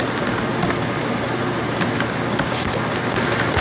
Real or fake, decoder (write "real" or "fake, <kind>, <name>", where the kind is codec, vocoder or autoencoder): real